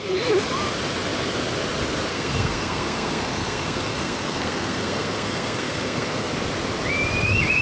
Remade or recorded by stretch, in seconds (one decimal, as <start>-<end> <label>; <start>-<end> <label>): 0.0-2.1 recorded; 2.1-6.3 remade; 6.3-7.6 recorded